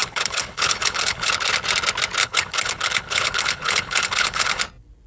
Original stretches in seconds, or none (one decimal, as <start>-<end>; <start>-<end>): 1.3-2.2; 4.6-5.1